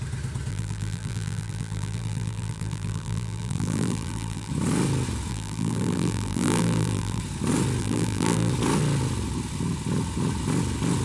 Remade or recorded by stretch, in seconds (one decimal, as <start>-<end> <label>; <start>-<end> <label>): 0.0-0.5 recorded; 0.5-4.5 remade; 4.5-5.3 recorded; 5.3-7.2 remade; 7.2-7.8 recorded; 7.8-8.5 remade; 8.5-11.0 recorded